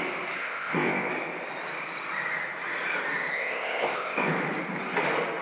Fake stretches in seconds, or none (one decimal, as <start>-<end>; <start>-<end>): 0.4-1.1; 3.3-4.3